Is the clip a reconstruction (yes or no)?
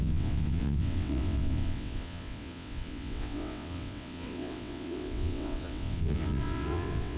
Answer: yes